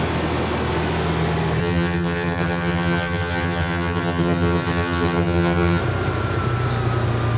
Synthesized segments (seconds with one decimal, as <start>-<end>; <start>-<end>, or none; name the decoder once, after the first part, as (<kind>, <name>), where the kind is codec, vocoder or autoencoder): 1.6-5.8 (vocoder, HiFi-GAN)